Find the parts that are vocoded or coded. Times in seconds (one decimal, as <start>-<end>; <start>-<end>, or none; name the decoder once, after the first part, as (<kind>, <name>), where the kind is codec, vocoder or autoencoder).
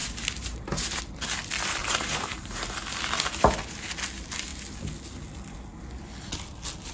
0.0-1.0 (vocoder, BigVGAN v2); 1.8-2.6